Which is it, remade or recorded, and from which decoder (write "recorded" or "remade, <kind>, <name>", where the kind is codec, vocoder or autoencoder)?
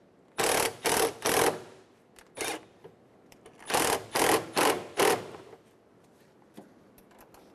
recorded